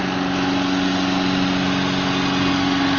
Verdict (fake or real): real